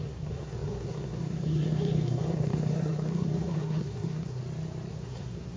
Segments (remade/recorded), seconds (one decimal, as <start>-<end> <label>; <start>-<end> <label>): 0.0-4.4 remade; 4.4-4.9 recorded; 4.9-5.6 remade